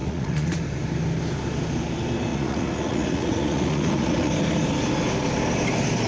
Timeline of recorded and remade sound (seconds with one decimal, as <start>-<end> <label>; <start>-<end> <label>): 0.0-0.6 remade; 0.6-2.3 recorded; 2.3-4.3 remade; 4.3-6.1 recorded